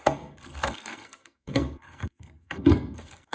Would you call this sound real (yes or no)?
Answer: no